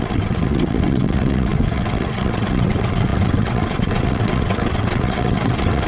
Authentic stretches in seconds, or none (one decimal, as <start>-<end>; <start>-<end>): none